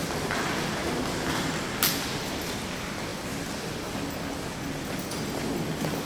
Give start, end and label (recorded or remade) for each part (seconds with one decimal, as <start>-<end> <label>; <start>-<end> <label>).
0.0-6.0 recorded